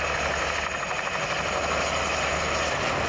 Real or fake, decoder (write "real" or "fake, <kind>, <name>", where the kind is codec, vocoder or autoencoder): real